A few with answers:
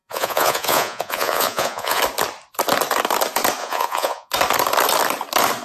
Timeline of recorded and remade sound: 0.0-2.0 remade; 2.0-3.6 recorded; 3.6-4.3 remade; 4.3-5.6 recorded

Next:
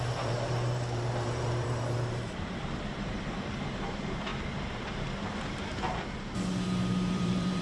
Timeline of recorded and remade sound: 0.0-4.3 remade; 4.3-7.1 recorded; 7.1-7.6 remade

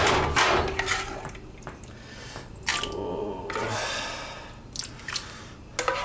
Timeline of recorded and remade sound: 0.0-6.0 recorded